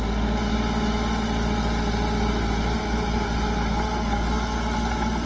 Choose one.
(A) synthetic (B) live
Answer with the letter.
B